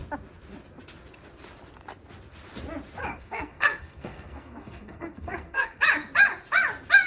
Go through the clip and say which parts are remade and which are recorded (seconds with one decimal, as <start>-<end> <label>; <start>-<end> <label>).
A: 0.0-3.1 recorded; 3.1-5.8 remade; 5.8-7.1 recorded